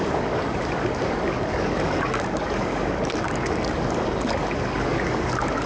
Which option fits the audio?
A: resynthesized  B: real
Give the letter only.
A